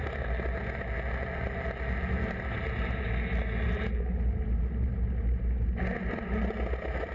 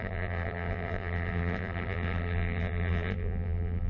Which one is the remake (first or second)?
second